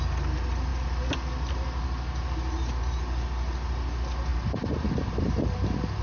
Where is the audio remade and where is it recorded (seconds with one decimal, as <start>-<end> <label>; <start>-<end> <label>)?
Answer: 0.0-6.0 recorded